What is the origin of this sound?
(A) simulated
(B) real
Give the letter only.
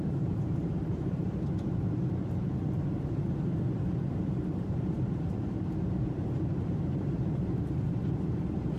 A